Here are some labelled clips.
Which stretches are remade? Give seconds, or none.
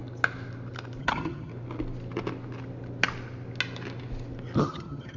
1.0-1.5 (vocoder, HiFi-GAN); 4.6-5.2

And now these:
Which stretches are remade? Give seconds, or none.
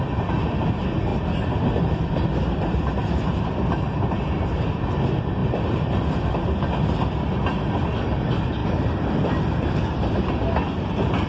5.4-6.3 (vocoder, BigVGAN v2); 8.6-9.7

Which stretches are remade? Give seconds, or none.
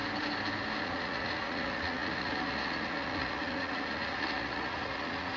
0.8-5.4 (vocoder, Vocos)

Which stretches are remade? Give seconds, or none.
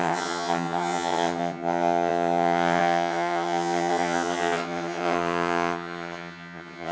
0.0-6.9 (vocoder, HiFi-GAN)